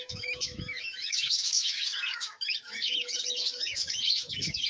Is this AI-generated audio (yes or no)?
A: yes